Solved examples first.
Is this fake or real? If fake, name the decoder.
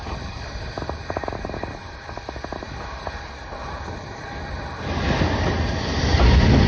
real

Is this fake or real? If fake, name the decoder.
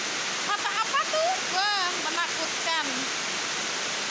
real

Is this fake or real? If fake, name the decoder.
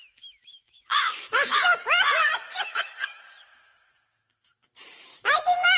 fake, autoencoder, DAC-VAE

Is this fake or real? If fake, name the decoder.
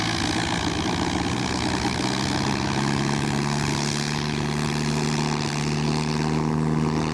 real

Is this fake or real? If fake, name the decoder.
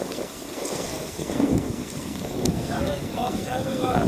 fake, codec, SNAC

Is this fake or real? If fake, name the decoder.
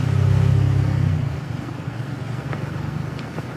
fake, codec, SNAC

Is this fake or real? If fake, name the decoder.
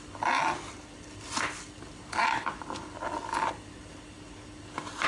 real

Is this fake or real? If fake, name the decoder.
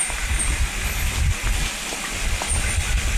real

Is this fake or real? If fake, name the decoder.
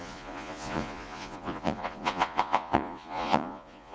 fake, vocoder, Vocos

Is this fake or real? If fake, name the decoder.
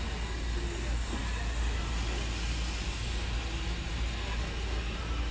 real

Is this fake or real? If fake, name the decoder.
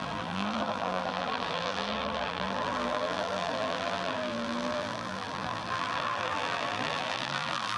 fake, vocoder, BigVGAN v2